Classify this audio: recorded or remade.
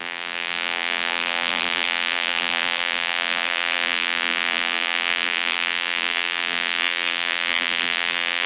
remade